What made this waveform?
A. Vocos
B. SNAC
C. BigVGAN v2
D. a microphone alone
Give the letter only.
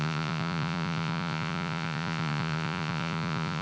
A